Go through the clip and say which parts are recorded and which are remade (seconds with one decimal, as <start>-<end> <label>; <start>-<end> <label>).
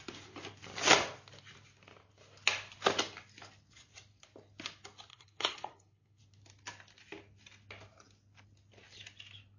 0.0-5.1 recorded; 5.1-6.2 remade; 6.2-9.6 recorded